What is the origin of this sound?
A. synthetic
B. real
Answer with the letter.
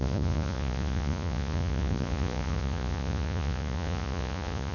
A